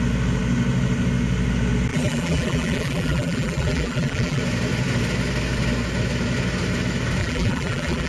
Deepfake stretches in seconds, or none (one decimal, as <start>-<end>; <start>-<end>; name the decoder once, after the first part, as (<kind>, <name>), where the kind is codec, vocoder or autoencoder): 1.9-4.4 (vocoder, BigVGAN v2); 7.2-8.1